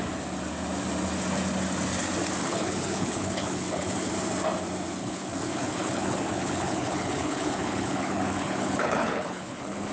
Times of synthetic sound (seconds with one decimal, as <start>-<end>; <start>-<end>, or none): 2.4-4.1; 5.0-9.9